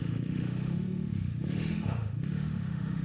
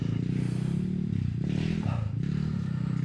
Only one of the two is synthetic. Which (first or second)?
first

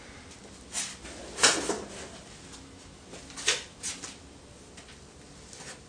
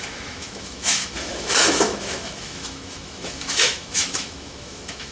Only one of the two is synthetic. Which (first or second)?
second